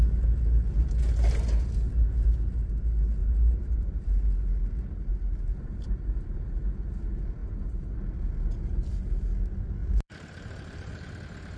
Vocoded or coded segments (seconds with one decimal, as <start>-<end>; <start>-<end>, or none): 3.2-4.2; 5.1-6.0; 9.8-11.1